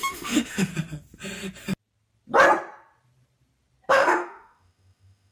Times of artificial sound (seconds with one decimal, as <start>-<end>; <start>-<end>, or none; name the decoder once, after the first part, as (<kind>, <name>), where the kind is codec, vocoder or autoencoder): 0.0-0.7 (autoencoder, DAC-VAE); 3.9-5.3